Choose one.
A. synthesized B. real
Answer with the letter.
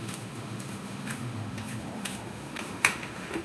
A